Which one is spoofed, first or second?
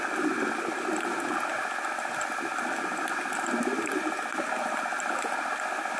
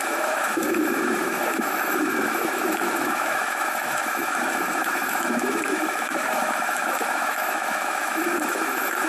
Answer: second